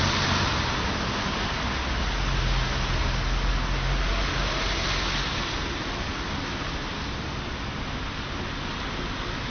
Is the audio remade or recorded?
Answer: recorded